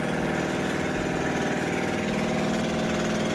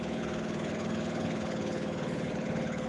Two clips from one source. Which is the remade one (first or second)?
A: second